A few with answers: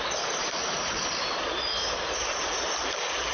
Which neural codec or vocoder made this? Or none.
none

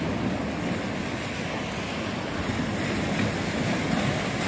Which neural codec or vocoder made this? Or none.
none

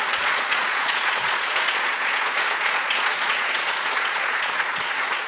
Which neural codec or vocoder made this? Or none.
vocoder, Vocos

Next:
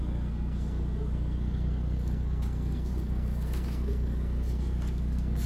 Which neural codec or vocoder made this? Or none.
codec, SNAC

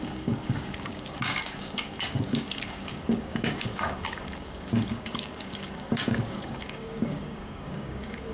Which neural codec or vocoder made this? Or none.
codec, DAC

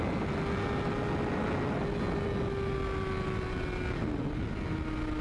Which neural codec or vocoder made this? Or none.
none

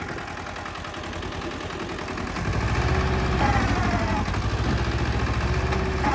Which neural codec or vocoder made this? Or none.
none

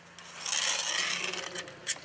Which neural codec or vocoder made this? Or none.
none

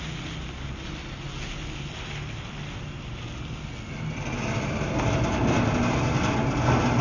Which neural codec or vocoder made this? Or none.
none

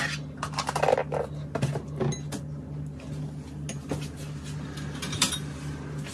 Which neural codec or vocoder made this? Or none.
none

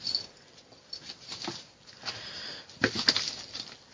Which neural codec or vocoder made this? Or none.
none